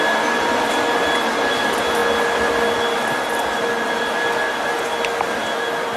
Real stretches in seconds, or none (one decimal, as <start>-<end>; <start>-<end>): 0.0-6.0